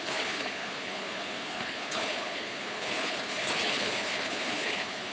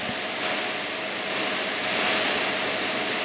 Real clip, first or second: second